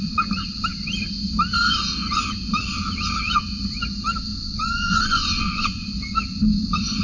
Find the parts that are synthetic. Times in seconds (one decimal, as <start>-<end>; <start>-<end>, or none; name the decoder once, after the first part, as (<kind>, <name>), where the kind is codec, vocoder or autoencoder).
4.3-5.9 (vocoder, Vocos)